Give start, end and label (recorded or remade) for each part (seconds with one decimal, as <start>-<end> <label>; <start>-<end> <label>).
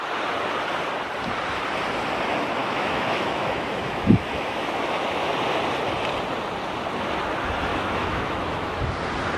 0.0-2.6 recorded; 2.6-5.3 remade; 5.3-7.7 recorded; 7.7-8.8 remade; 8.8-9.4 recorded